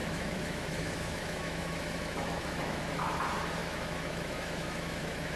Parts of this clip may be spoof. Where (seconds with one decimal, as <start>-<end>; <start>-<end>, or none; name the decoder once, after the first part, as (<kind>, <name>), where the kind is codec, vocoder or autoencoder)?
0.0-3.2 (autoencoder, DAC-VAE); 3.6-5.4